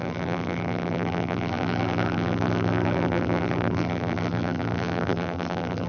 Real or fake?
fake